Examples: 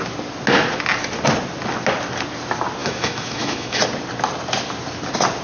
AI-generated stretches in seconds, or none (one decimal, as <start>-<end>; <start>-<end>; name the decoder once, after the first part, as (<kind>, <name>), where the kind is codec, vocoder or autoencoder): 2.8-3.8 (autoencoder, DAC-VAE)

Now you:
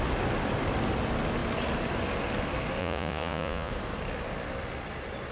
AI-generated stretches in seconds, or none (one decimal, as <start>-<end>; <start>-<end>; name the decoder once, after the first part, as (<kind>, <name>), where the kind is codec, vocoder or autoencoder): 2.8-3.7 (vocoder, Vocos)

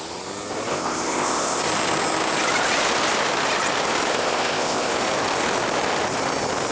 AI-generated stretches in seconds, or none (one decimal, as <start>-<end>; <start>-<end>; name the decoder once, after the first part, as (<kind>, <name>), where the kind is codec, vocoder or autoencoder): 0.7-1.6 (codec, ZipCodec); 4.1-4.9